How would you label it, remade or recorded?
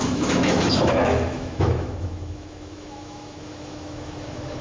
remade